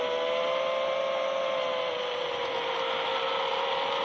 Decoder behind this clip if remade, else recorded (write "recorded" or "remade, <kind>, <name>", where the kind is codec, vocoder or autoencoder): recorded